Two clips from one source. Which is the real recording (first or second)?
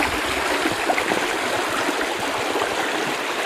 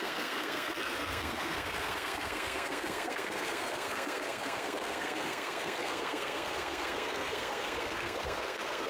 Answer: first